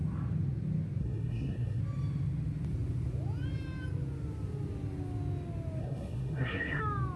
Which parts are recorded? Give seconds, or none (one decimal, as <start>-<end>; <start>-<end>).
0.0-1.0; 1.8-5.8; 6.8-7.2

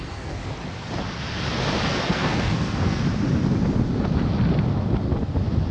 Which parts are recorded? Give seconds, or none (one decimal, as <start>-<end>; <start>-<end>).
0.4-1.9; 3.0-5.7

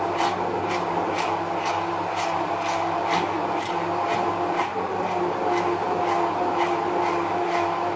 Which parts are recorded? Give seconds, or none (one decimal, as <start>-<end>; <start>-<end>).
0.0-8.0